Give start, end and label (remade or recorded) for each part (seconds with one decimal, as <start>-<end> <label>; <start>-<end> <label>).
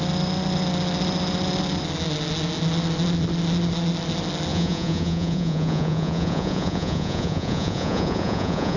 0.0-4.5 recorded; 4.5-8.8 remade